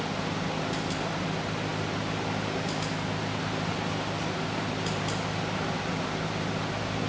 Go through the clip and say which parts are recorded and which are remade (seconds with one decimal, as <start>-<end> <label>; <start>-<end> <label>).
0.0-7.1 recorded